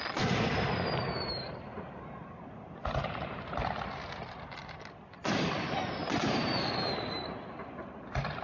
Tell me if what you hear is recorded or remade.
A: recorded